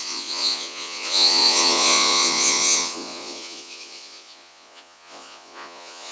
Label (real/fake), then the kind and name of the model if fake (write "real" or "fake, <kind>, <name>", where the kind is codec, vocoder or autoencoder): fake, vocoder, Vocos